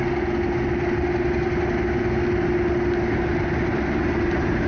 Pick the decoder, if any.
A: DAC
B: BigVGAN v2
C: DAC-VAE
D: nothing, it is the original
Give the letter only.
D